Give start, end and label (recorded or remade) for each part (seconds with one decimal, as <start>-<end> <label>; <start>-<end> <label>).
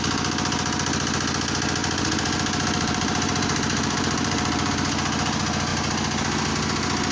0.0-1.8 recorded; 1.8-4.7 remade; 4.7-7.1 recorded